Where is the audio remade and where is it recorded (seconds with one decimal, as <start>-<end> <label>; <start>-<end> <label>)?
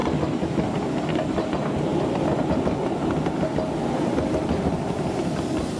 0.0-5.8 recorded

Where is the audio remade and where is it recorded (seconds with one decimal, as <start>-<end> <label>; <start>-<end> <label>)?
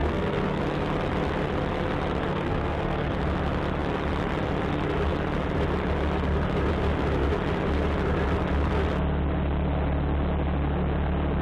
0.0-0.6 remade; 0.6-2.3 recorded; 2.3-3.1 remade; 3.1-11.4 recorded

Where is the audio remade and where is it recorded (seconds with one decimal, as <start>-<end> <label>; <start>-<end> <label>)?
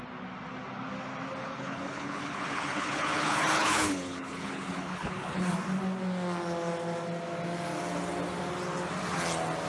0.0-1.4 recorded; 1.4-5.5 remade; 5.5-9.7 recorded